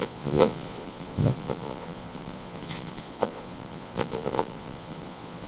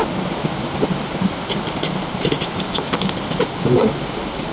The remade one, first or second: first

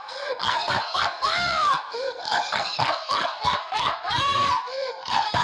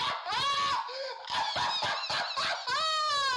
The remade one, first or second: first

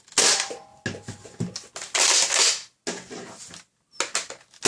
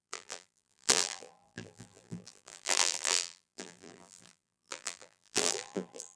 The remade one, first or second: second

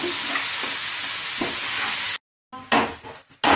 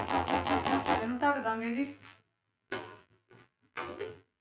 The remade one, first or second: second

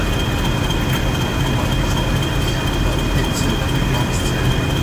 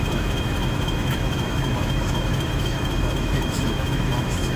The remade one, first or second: second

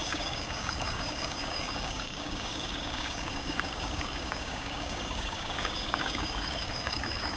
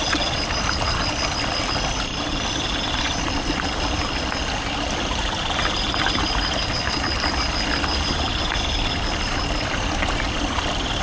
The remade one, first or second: first